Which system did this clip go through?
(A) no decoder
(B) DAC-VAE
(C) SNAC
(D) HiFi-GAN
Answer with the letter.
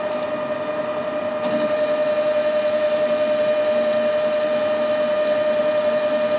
A